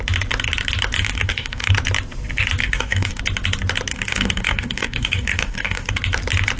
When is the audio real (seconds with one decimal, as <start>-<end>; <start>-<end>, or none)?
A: 0.0-1.0; 1.7-2.6; 3.2-3.9; 5.9-6.6